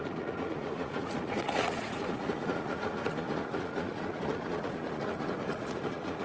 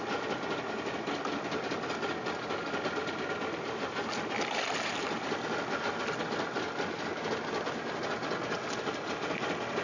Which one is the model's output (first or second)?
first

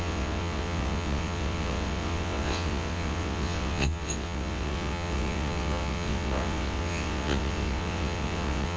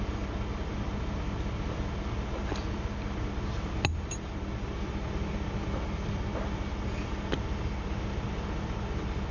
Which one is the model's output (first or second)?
first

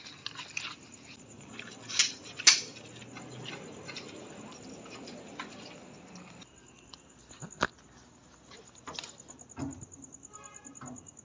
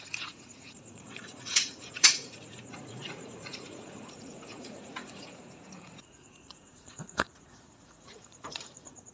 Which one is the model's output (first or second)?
second